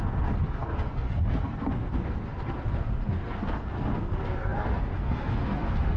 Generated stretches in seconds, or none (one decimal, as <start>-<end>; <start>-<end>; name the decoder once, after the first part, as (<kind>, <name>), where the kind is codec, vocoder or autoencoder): 0.0-6.0 (codec, SNAC)